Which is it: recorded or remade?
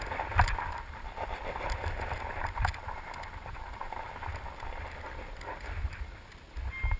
recorded